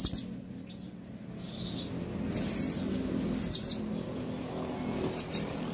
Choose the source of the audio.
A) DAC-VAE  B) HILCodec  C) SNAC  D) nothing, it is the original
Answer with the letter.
D